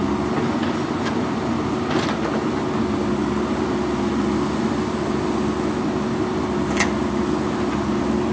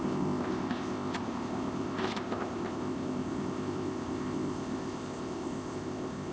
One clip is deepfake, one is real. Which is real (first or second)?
first